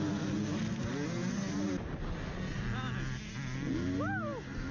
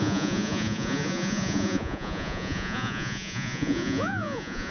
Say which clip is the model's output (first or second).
second